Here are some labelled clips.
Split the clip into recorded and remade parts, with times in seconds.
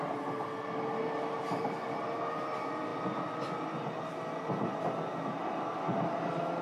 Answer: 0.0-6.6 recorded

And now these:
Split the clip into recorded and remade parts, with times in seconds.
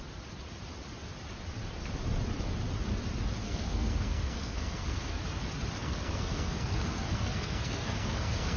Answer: 0.0-3.4 recorded; 3.4-5.2 remade; 5.2-5.8 recorded; 5.8-8.6 remade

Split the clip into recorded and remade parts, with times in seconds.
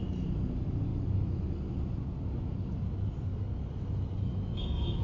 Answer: 0.0-0.9 recorded; 0.9-1.5 remade; 1.5-3.3 recorded; 3.3-5.0 remade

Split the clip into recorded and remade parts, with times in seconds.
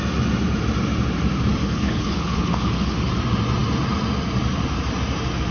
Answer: 0.0-1.6 recorded; 1.6-3.1 remade; 3.1-5.5 recorded